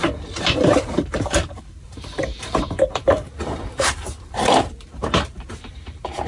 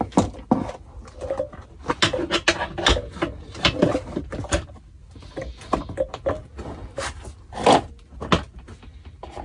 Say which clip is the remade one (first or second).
first